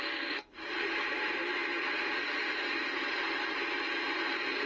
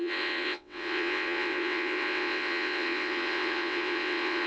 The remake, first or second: second